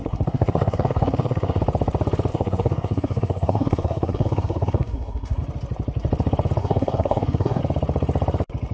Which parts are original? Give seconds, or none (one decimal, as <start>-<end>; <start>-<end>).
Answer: 1.6-2.3; 5.4-6.6; 7.6-8.7